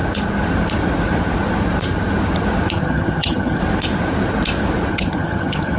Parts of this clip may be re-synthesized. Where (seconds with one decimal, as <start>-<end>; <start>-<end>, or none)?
2.7-3.6; 4.9-5.8